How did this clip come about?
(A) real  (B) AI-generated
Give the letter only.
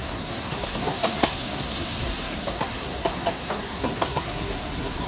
B